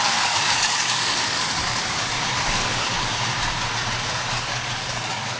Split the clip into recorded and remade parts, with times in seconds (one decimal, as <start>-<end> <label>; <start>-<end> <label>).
0.0-3.1 remade; 3.1-4.1 recorded; 4.1-5.4 remade